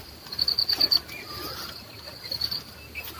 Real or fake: real